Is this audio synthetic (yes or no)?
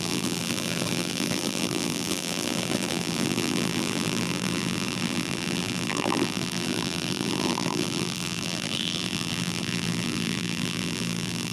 yes